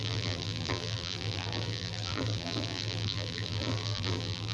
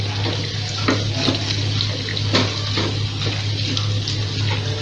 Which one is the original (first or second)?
second